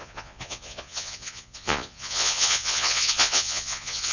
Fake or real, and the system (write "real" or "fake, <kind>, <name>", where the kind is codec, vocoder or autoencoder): fake, vocoder, Vocos